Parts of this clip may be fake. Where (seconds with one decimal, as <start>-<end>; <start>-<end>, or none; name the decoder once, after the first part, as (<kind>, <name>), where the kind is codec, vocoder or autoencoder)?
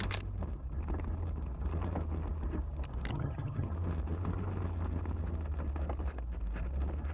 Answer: 3.1-3.7 (vocoder, HiFi-GAN)